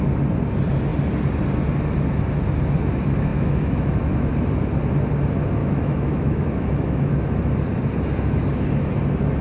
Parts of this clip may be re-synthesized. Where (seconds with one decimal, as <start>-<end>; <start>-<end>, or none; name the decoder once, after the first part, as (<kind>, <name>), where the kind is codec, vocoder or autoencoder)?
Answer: 3.3-4.3 (autoencoder, DAC-VAE); 5.6-7.1